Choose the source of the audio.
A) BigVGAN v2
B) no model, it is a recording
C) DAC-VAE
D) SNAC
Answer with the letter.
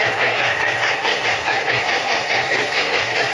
D